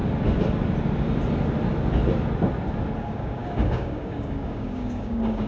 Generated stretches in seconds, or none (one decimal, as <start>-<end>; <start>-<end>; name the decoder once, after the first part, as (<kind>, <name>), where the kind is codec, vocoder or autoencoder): 3.0-5.5 (codec, DAC)